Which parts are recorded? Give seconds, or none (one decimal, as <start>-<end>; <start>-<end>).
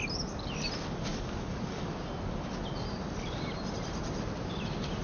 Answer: 0.0-1.1; 1.9-5.0